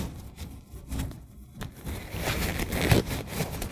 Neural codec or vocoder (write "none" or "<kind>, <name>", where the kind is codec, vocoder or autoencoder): vocoder, BigVGAN v2